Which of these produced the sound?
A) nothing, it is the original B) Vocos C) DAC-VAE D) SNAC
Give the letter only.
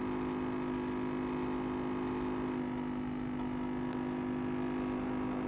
A